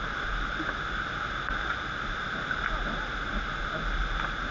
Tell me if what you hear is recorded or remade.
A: recorded